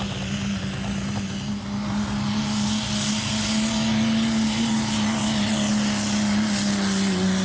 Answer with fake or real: real